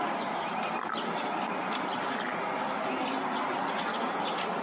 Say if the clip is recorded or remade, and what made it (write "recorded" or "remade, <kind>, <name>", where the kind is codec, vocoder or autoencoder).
recorded